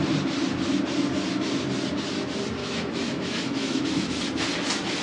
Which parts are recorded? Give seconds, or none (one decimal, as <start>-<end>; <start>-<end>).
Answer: 0.0-2.6; 4.1-5.0